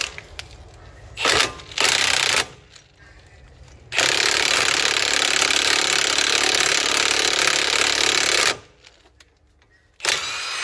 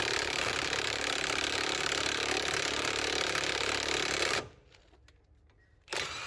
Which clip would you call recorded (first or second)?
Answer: first